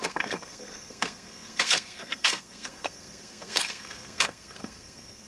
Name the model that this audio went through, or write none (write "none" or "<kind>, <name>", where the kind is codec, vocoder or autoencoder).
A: codec, SNAC